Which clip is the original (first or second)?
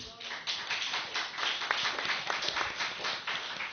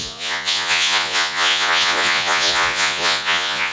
first